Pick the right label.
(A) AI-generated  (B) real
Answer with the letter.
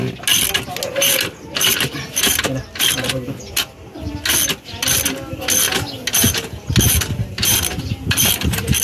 B